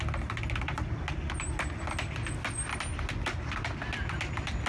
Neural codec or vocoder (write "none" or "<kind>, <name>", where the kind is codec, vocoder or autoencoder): none